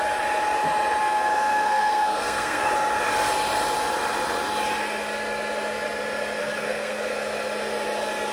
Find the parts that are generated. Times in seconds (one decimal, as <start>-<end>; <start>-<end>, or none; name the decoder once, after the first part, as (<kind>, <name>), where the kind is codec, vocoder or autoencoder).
1.0-2.7 (codec, SNAC); 6.4-7.1